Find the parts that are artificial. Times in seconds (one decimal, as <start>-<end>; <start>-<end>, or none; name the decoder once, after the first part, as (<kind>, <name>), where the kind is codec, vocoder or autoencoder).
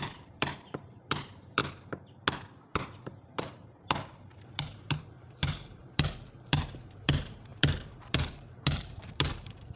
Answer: 0.0-1.6 (vocoder, BigVGAN v2); 2.8-9.8